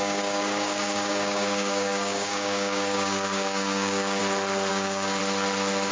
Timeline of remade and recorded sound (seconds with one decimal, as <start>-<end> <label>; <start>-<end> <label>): 0.0-4.2 remade; 4.2-4.7 recorded; 4.7-5.2 remade; 5.2-5.9 recorded